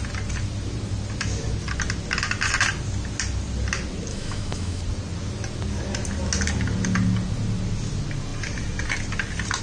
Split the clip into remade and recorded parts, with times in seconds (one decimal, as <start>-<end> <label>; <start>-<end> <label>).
0.0-4.1 recorded; 4.1-4.8 remade; 4.8-9.6 recorded